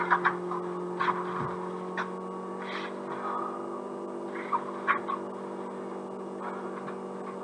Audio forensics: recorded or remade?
recorded